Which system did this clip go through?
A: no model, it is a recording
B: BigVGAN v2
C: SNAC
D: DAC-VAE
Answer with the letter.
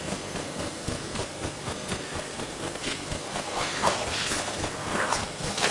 C